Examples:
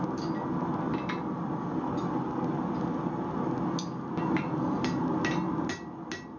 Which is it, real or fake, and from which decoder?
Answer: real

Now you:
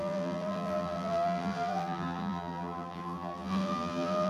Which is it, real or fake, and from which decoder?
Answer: fake, vocoder, BigVGAN v2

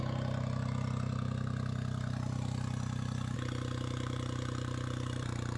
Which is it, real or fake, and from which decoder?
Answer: real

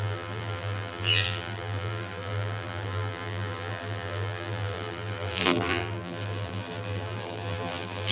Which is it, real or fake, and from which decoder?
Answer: fake, vocoder, BigVGAN v2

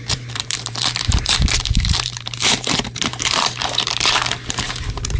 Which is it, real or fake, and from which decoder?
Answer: fake, vocoder, BigVGAN v2